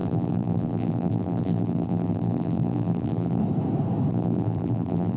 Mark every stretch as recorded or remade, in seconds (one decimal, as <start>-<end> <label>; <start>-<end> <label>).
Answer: 0.0-3.4 remade; 3.4-4.1 recorded; 4.1-5.2 remade